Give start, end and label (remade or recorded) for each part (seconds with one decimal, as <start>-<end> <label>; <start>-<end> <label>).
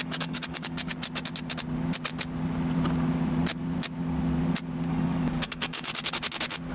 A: 0.0-0.9 remade; 0.9-4.9 recorded; 4.9-5.9 remade; 5.9-6.7 recorded